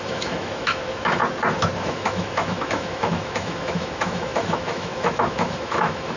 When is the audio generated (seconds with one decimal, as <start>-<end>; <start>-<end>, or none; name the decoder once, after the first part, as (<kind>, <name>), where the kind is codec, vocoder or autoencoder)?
0.0-1.2 (autoencoder, DAC-VAE); 1.8-6.2